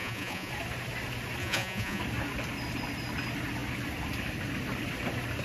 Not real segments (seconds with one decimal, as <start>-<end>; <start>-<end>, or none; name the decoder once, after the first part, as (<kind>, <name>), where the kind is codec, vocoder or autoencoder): 0.0-0.5 (vocoder, Vocos); 1.4-2.0